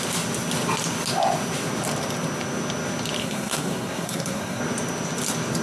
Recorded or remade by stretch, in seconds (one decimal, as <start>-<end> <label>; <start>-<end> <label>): 0.0-3.2 recorded; 3.2-4.6 remade; 4.6-5.6 recorded